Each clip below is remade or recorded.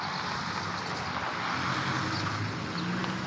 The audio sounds recorded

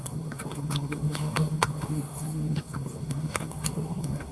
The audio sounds remade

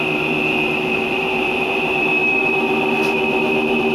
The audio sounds remade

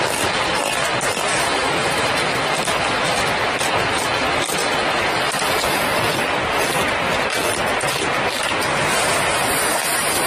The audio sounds recorded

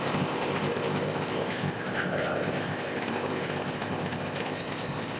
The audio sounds remade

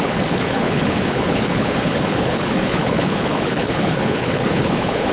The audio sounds remade